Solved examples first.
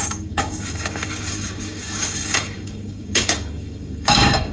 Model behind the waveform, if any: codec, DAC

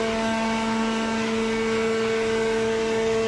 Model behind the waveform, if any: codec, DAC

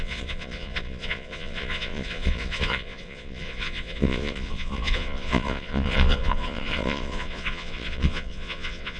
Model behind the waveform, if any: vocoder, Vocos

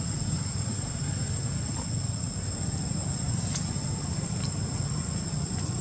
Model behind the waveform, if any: none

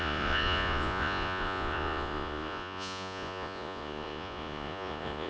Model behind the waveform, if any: vocoder, Vocos